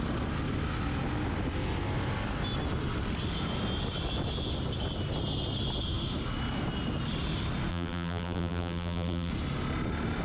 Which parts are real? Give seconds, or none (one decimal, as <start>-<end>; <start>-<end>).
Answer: 0.0-7.7; 9.3-10.2